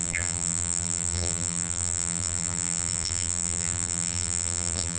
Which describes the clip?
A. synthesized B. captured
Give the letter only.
A